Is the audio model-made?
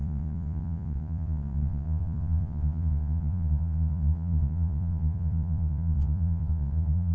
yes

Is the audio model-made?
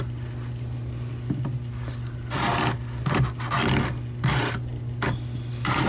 no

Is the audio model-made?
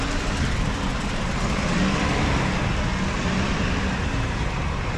no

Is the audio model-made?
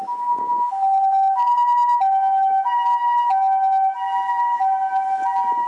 no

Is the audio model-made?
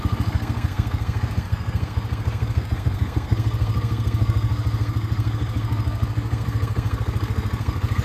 yes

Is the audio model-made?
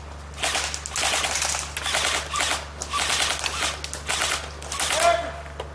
no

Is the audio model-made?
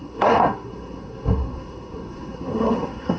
yes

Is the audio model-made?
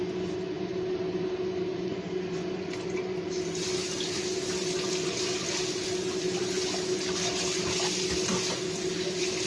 no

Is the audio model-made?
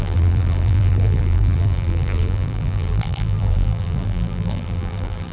yes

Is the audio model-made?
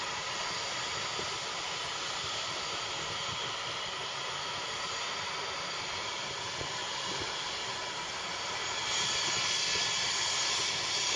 no